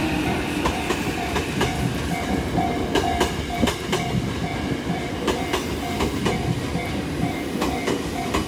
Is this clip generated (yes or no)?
no